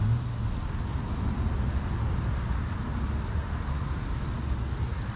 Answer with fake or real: real